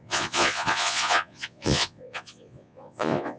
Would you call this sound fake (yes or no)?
yes